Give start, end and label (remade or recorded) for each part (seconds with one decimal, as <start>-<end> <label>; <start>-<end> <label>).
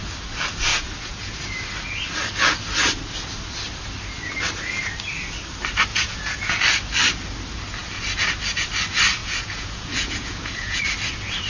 0.0-0.7 recorded; 0.7-1.4 remade; 1.4-5.9 recorded; 5.9-6.6 remade; 6.6-9.2 recorded; 9.2-10.8 remade; 10.8-11.5 recorded